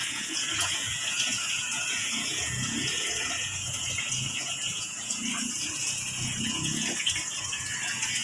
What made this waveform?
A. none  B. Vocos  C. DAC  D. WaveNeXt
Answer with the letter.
B